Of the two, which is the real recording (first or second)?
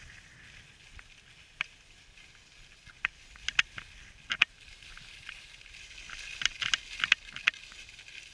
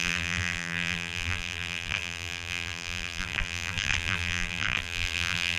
first